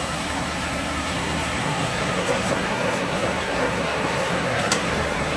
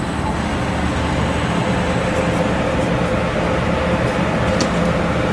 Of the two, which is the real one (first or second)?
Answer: second